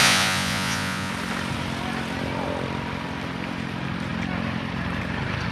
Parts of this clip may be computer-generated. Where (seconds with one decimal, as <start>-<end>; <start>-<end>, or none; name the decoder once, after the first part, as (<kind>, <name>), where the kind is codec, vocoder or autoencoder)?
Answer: 0.0-1.1 (vocoder, Vocos)